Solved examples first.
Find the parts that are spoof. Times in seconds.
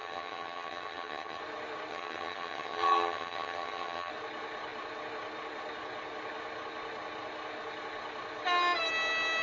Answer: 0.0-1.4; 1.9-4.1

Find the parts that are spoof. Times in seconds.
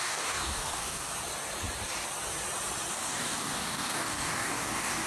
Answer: 0.0-1.1; 2.9-5.1